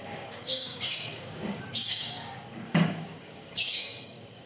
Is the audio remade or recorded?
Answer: remade